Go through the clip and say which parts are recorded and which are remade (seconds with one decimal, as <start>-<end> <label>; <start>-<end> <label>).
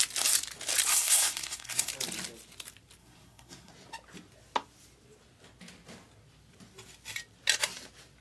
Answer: 0.0-0.9 recorded; 0.9-1.9 remade; 1.9-3.0 recorded; 3.0-3.7 remade; 3.7-8.2 recorded